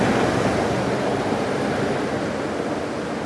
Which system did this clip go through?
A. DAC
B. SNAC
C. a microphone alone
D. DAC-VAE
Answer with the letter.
C